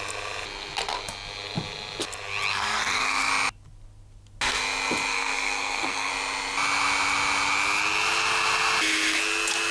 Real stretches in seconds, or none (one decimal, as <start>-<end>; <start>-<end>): 0.0-2.5; 3.3-5.1; 6.1-9.7